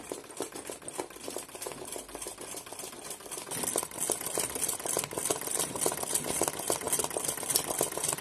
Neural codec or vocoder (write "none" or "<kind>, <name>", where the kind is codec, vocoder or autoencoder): none